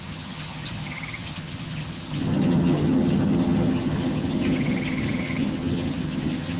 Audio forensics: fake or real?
fake